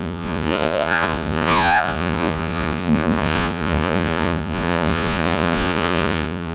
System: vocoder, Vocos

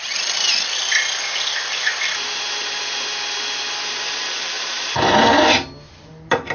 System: none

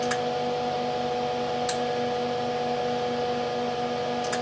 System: none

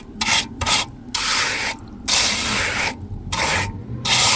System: none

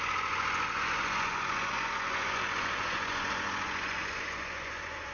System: vocoder, Vocos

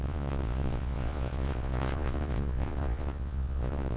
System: vocoder, Vocos